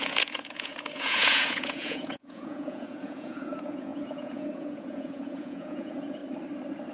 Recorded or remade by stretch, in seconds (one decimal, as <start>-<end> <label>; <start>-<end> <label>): 0.0-6.2 remade; 6.2-6.9 recorded